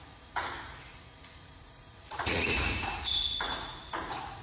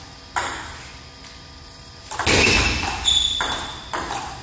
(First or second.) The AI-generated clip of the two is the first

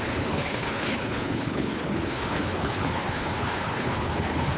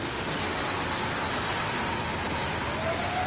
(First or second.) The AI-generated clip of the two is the first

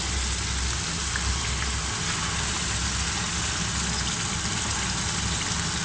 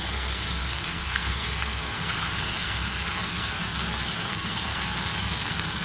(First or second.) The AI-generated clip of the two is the second